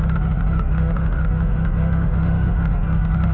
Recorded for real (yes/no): no